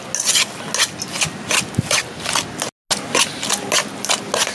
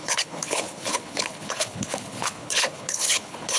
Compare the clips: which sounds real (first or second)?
first